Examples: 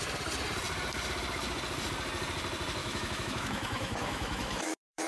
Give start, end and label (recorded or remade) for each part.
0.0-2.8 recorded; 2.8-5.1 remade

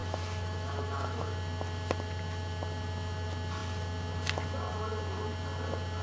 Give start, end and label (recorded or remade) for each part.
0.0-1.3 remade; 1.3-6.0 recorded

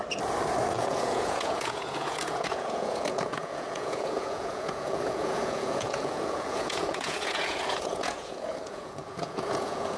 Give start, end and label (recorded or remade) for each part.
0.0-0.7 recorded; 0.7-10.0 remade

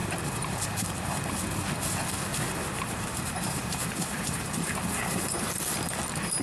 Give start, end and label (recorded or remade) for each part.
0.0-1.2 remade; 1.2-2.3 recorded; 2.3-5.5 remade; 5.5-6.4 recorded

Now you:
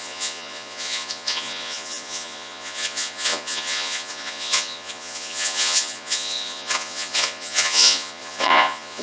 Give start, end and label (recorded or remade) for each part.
0.0-9.0 remade

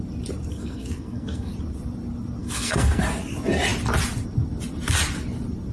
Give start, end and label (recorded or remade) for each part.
0.0-0.5 recorded; 0.5-1.5 remade; 1.5-2.4 recorded; 2.4-3.0 remade; 3.0-5.7 recorded

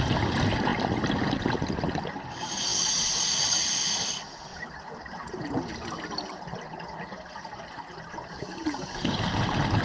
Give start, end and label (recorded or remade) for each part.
0.0-9.8 recorded

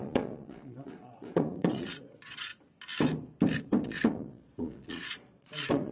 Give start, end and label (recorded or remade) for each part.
0.0-2.5 remade; 2.5-3.6 recorded; 3.6-5.9 remade